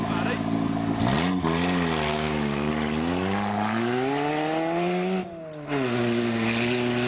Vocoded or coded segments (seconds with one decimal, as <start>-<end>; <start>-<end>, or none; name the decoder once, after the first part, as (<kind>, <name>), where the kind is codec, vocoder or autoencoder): 2.1-2.7 (codec, DAC)